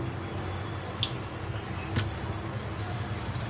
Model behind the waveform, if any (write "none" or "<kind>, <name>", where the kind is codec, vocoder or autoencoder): none